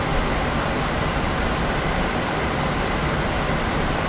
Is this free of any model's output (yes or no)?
no